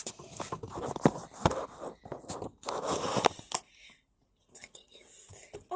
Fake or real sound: real